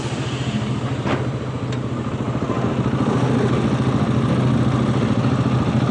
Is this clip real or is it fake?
real